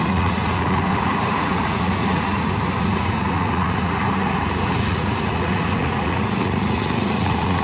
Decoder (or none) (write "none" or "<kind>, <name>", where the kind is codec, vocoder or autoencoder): vocoder, Vocos